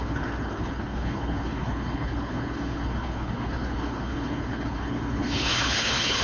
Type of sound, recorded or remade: remade